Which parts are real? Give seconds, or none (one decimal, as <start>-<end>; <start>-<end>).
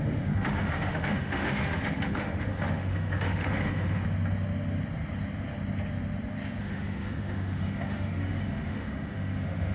4.0-6.6